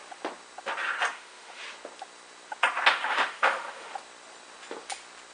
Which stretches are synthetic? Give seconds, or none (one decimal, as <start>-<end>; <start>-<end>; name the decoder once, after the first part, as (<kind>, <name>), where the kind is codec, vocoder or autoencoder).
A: 1.1-1.6 (autoencoder, DAC-VAE); 2.9-3.9